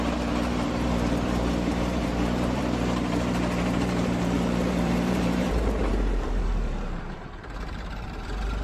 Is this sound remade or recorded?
remade